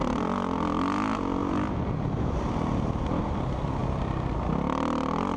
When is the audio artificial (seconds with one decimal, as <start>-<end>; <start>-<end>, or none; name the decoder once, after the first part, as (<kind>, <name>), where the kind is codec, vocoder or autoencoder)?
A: none